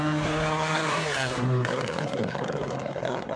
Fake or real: fake